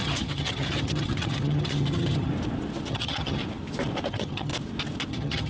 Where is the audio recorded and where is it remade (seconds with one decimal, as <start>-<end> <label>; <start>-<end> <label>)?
0.0-2.3 remade; 2.3-2.9 recorded; 2.9-3.4 remade; 3.4-4.1 recorded; 4.1-4.5 remade; 4.5-5.1 recorded; 5.1-5.5 remade